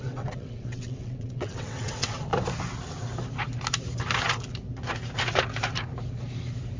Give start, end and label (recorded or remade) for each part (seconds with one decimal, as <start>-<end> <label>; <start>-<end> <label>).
0.0-2.3 remade; 2.3-6.8 recorded